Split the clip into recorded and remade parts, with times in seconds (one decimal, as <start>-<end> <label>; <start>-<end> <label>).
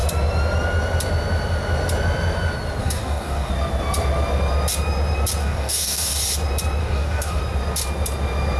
0.0-2.8 recorded; 2.8-3.5 remade; 3.5-5.4 recorded; 5.4-6.2 remade; 6.2-6.8 recorded; 6.8-7.4 remade; 7.4-8.6 recorded